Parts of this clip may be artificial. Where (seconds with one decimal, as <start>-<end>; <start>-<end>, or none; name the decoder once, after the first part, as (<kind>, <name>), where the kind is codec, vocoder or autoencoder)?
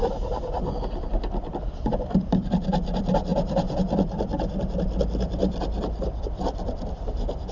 0.0-3.3 (vocoder, BigVGAN v2); 5.0-7.5